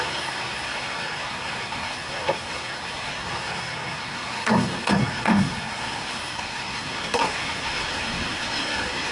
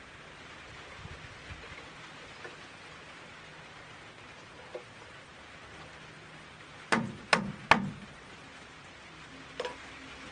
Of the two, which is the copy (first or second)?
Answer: first